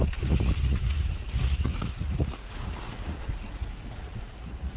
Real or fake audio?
fake